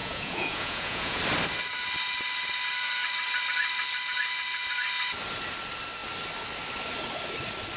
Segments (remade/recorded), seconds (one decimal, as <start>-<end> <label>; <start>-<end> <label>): 0.0-1.2 remade; 1.2-7.8 recorded